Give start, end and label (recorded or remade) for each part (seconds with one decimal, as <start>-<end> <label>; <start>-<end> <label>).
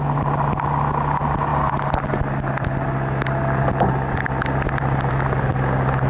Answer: 0.0-6.1 recorded